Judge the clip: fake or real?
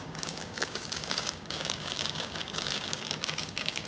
fake